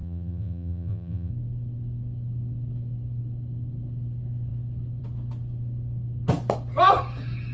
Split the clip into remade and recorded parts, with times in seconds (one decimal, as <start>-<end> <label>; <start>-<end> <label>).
0.0-1.3 remade; 1.3-7.5 recorded